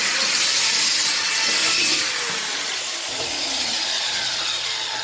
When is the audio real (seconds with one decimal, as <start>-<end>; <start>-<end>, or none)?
0.0-1.6; 4.6-5.0

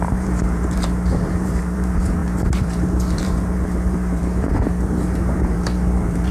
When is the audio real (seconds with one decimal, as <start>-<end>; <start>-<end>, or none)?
none

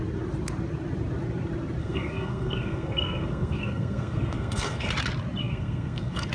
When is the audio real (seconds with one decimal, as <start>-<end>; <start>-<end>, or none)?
0.0-1.8; 4.9-5.4

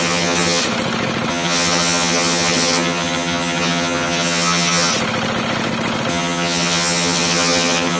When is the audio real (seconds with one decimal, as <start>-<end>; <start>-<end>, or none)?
0.6-1.3; 4.9-6.1

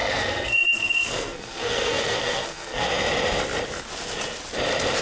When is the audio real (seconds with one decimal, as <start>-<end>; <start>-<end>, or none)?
2.9-5.0

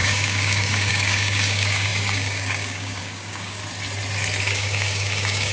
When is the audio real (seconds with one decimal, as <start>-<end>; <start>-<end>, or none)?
3.6-4.4